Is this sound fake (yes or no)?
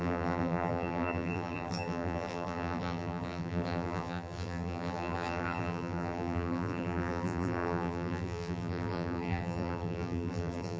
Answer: yes